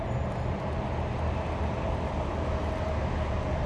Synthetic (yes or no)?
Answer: no